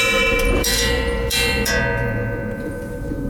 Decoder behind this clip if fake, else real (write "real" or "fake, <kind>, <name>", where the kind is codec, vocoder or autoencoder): fake, vocoder, Vocos